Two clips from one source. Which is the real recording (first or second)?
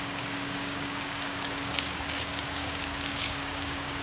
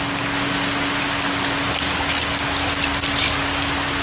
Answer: second